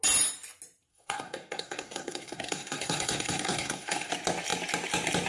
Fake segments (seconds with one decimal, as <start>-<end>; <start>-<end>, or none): 0.9-4.1